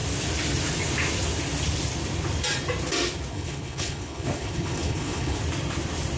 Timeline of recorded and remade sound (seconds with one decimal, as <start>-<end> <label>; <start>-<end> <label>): 0.0-3.3 recorded; 3.3-5.4 remade; 5.4-6.2 recorded